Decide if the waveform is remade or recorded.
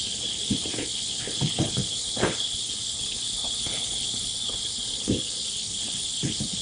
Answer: remade